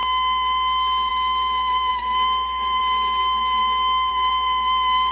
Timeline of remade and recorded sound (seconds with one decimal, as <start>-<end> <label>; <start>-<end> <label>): 0.0-5.1 recorded